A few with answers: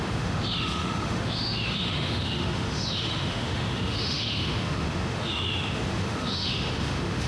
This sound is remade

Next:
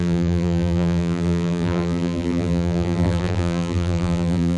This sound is remade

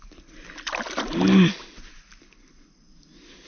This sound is recorded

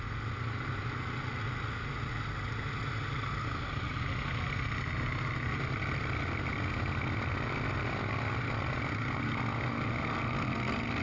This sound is recorded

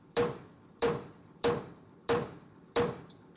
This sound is remade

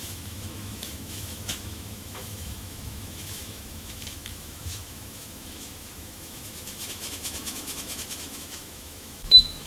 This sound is remade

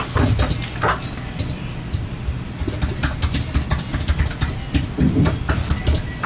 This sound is recorded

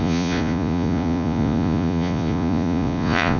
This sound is remade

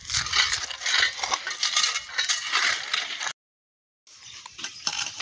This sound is recorded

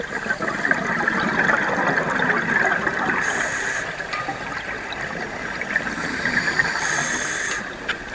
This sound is remade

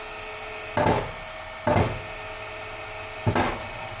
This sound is recorded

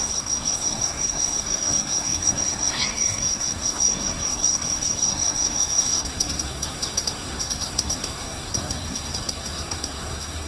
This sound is remade